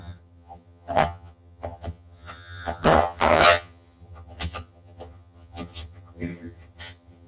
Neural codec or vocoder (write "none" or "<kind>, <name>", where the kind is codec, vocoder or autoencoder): vocoder, HiFi-GAN